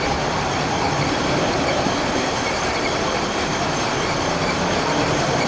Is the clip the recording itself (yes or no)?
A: no